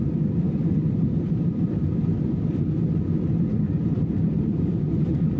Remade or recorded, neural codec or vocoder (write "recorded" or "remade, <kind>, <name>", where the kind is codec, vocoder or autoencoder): recorded